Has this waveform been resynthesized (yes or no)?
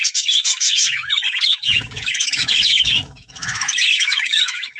yes